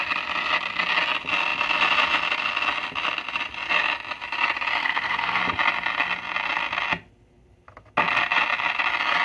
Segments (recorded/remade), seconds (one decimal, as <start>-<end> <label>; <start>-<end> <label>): 0.0-4.8 recorded; 4.8-5.4 remade; 5.4-9.2 recorded